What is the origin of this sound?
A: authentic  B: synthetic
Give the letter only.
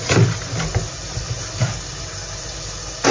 A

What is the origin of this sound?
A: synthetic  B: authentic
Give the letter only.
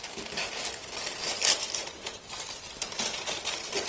B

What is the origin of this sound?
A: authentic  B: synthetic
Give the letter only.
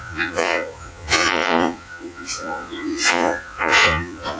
B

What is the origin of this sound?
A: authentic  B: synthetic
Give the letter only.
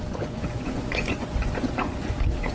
B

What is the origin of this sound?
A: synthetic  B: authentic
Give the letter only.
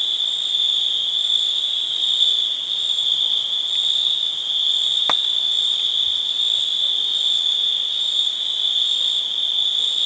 B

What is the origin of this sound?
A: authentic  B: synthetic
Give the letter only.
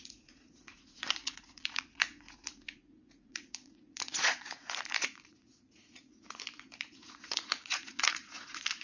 B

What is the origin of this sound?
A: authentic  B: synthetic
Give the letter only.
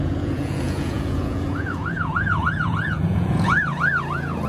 B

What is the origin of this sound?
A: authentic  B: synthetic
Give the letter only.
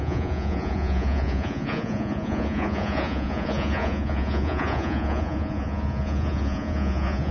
B